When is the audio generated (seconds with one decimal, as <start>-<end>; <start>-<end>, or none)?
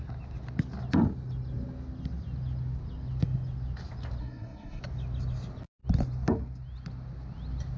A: 4.2-4.8